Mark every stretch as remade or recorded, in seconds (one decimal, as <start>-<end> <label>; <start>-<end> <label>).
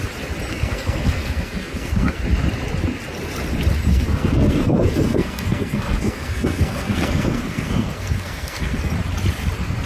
0.0-0.5 recorded; 0.5-2.2 remade; 2.2-3.9 recorded; 3.9-8.9 remade; 8.9-9.9 recorded